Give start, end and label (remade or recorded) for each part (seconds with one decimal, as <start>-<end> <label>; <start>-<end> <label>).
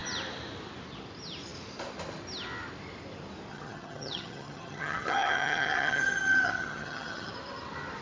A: 0.0-3.5 recorded; 3.5-7.3 remade; 7.3-8.0 recorded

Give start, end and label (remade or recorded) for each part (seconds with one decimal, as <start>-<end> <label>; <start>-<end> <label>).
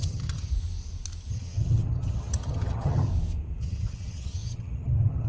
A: 0.0-0.5 remade; 0.5-1.3 recorded; 1.3-3.1 remade; 3.1-3.6 recorded; 3.6-5.3 remade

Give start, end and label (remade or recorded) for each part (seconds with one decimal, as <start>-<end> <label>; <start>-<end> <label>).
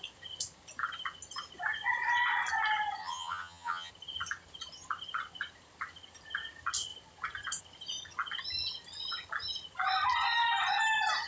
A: 0.0-3.0 recorded; 3.0-3.9 remade; 3.9-11.3 recorded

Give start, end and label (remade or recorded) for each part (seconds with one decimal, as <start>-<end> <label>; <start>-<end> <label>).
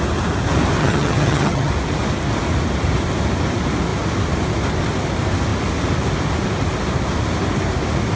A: 0.0-0.8 recorded; 0.8-1.7 remade; 1.7-8.2 recorded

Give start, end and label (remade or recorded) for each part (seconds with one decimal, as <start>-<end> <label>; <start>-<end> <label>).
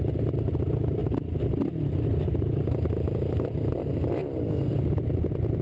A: 0.0-5.6 recorded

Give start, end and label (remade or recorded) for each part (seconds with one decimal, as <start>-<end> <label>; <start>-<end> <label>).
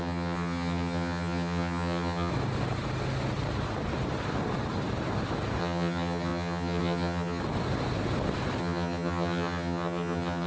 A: 0.0-2.3 remade; 2.3-5.6 recorded; 5.6-7.4 remade; 7.4-8.6 recorded; 8.6-10.5 remade